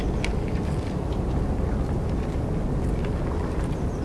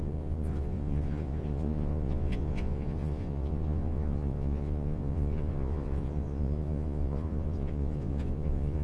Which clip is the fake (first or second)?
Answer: second